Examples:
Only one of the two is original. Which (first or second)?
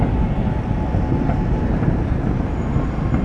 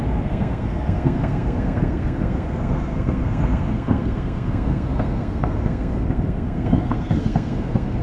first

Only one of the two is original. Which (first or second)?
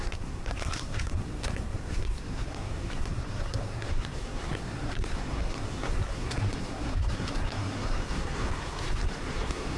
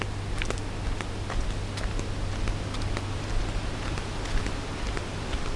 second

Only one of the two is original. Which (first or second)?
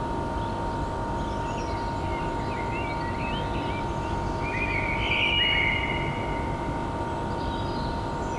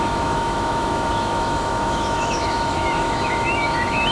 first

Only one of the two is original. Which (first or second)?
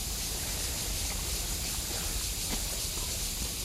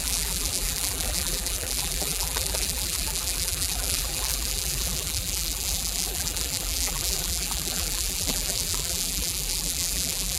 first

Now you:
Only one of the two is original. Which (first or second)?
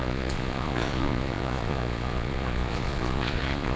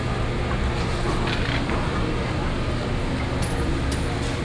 second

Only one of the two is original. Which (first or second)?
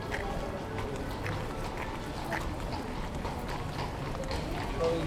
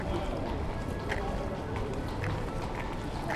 first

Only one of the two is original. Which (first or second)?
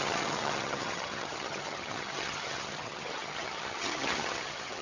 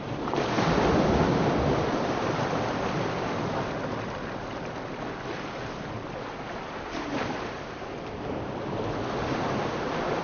second